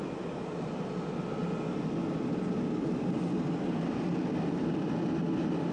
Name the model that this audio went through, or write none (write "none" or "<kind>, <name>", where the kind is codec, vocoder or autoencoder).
none